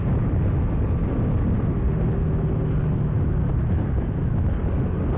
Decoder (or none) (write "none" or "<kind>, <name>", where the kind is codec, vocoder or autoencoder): none